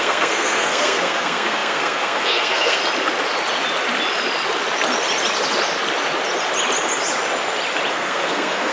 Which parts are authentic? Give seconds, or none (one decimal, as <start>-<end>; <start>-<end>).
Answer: 2.8-7.9